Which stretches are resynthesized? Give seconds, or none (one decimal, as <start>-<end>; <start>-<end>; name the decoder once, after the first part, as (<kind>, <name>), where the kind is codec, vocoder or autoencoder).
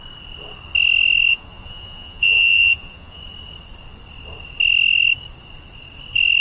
1.3-3.2 (vocoder, Vocos)